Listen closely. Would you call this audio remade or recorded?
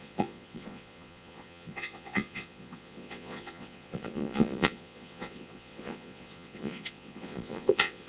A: remade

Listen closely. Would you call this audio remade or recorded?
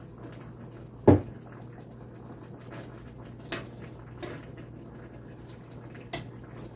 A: recorded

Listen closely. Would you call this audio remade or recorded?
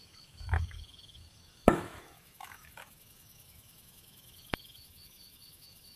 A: remade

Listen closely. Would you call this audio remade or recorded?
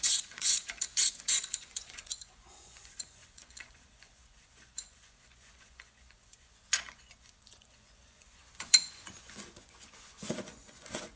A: remade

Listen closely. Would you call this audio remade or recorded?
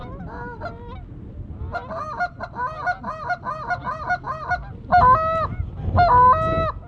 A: recorded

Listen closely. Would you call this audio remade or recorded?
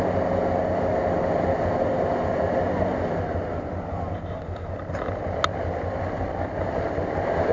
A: recorded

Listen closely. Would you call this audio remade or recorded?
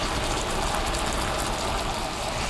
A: recorded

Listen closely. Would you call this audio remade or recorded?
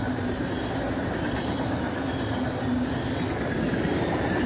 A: recorded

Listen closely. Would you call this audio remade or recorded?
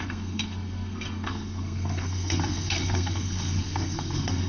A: remade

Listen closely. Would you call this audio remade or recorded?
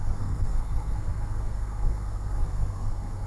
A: remade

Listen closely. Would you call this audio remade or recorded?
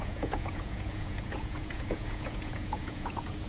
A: remade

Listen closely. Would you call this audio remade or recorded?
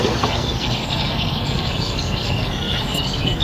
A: remade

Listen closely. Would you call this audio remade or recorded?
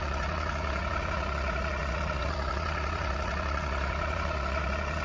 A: remade